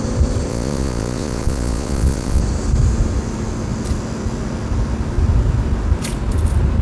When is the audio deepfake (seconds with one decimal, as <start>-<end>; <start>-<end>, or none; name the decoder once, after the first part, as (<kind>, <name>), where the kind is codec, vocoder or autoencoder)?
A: 0.5-2.4 (vocoder, Vocos)